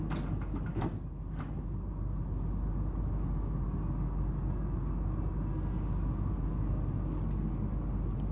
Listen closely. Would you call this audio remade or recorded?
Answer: recorded